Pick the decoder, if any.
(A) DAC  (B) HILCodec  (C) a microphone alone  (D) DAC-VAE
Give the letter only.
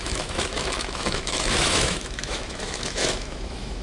D